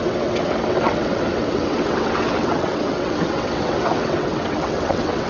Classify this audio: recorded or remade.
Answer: remade